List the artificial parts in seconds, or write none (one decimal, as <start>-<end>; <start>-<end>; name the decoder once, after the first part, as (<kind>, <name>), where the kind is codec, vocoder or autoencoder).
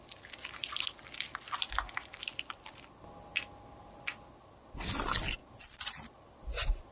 none